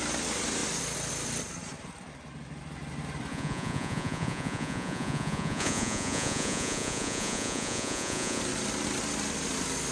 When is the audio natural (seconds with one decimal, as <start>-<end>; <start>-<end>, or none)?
0.0-3.3; 8.4-9.9